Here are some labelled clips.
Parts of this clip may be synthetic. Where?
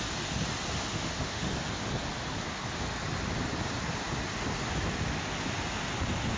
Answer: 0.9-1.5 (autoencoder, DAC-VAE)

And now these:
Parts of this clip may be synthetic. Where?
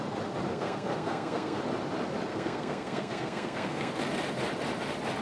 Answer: 0.5-1.6 (codec, SNAC); 2.3-3.9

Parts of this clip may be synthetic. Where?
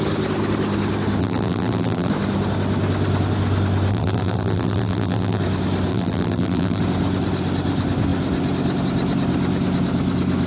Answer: 1.2-2.1 (vocoder, BigVGAN v2); 3.9-5.4; 5.9-6.8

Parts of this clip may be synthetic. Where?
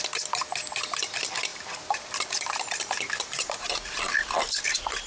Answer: 1.5-4.0 (vocoder, BigVGAN v2)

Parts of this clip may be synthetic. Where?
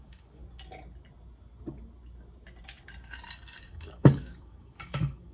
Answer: 0.0-0.4 (codec, DAC); 3.6-5.3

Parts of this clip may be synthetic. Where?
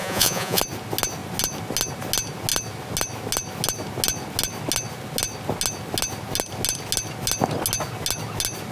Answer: 0.0-0.6 (vocoder, Vocos)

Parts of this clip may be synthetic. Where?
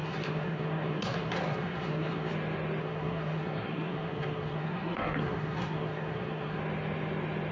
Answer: 0.0-2.3 (codec, SNAC); 2.8-6.6